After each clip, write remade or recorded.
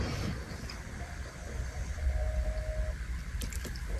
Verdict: recorded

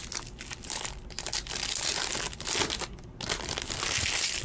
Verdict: recorded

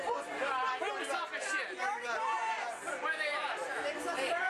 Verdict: remade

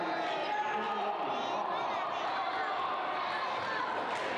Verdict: recorded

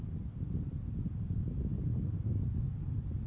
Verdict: recorded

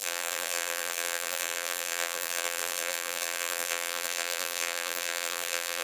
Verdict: remade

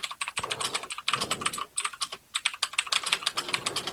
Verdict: recorded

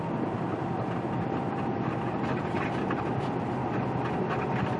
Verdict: recorded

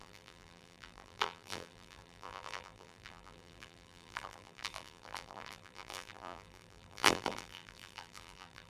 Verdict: remade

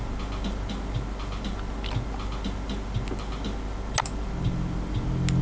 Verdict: recorded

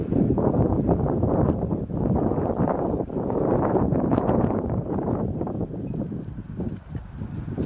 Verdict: remade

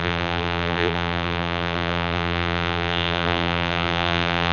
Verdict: remade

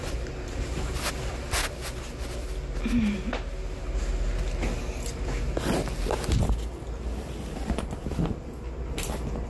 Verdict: recorded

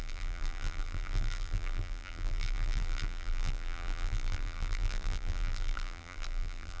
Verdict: remade